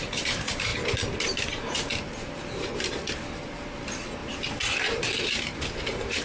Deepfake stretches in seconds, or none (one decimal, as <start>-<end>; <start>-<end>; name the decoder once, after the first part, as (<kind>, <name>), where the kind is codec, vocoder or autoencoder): 0.0-0.7 (vocoder, BigVGAN v2); 3.6-4.2; 5.3-6.2